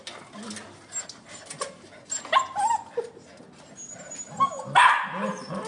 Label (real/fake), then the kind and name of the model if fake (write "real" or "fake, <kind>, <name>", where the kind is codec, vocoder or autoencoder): real